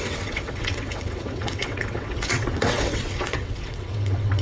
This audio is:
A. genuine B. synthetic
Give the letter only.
B